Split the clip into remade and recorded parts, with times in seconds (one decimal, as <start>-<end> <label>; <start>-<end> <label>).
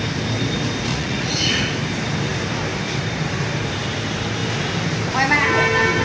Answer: 0.0-0.9 recorded; 0.9-1.7 remade; 1.7-6.0 recorded